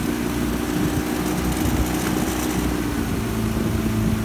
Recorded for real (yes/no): yes